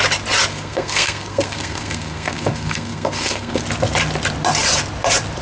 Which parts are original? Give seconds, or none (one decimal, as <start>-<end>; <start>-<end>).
0.0-0.5; 3.6-5.4